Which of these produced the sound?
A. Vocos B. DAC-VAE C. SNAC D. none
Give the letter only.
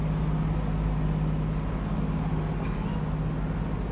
D